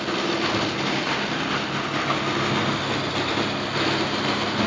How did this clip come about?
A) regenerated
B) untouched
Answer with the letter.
B